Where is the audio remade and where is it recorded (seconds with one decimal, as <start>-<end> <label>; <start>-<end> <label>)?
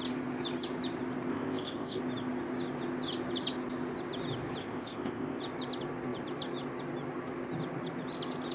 0.0-1.3 recorded; 1.3-2.0 remade; 2.0-4.6 recorded; 4.6-5.4 remade; 5.4-8.5 recorded